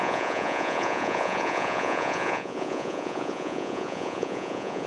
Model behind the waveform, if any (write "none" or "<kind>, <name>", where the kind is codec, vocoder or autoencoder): vocoder, Vocos